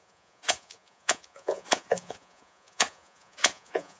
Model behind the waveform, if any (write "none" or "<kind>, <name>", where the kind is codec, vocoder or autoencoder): vocoder, Vocos